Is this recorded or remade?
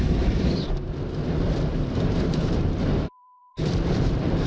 remade